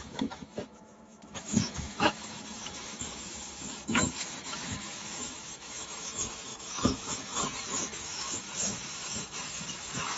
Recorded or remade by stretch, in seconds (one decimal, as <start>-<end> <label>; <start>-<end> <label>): 0.0-10.2 remade